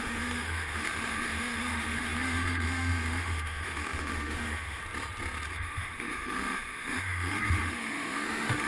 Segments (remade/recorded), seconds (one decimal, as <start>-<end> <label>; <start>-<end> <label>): 0.0-4.8 remade; 4.8-5.5 recorded; 5.5-8.7 remade